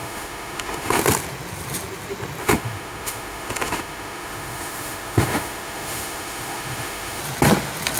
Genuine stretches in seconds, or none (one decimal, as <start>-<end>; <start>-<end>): 1.0-2.4; 7.2-8.0